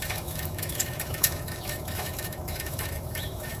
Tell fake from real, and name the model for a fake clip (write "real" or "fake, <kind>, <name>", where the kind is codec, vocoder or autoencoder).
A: fake, autoencoder, DAC-VAE